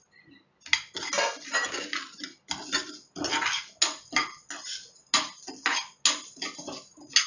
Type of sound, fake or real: real